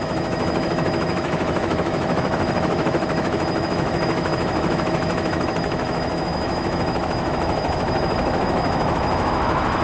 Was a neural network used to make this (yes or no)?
yes